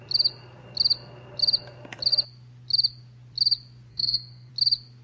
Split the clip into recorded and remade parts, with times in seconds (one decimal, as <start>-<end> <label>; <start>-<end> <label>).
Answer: 0.0-3.9 recorded; 3.9-4.5 remade; 4.5-5.0 recorded